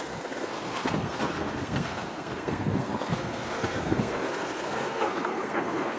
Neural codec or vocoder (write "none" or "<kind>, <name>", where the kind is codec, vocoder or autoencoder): codec, SNAC